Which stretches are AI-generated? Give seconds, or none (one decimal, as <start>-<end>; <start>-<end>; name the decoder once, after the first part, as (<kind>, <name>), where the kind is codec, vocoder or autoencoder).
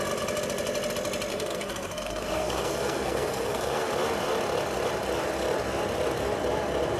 1.3-3.9 (codec, SNAC)